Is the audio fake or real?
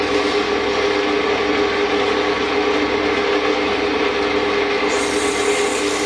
real